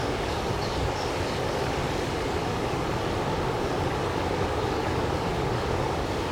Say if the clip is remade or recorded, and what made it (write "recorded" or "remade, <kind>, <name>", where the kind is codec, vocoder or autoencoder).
remade, codec, DAC